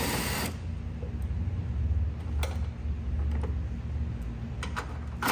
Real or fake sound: real